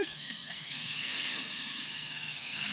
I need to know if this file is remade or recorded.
remade